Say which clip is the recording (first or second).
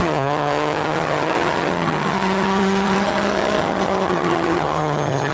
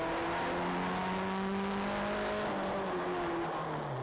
second